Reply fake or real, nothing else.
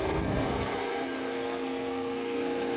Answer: fake